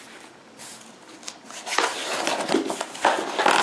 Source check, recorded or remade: recorded